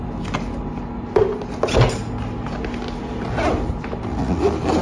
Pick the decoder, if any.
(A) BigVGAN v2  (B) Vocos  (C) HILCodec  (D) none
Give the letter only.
D